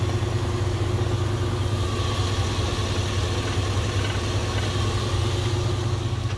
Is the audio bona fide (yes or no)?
yes